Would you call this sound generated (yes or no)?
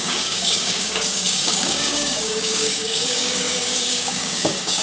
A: yes